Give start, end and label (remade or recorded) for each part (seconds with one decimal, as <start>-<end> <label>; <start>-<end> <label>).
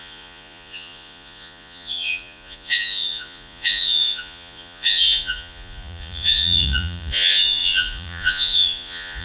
0.0-9.2 remade